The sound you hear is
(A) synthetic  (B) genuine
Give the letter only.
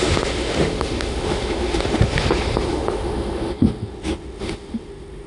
A